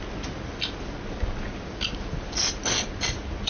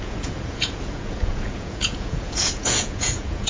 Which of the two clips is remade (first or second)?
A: second